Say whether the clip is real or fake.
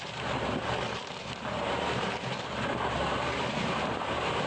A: fake